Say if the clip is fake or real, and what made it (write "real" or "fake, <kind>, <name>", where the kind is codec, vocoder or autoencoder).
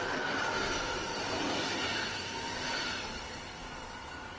real